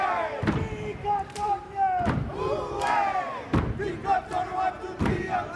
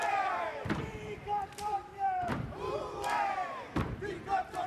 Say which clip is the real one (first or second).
first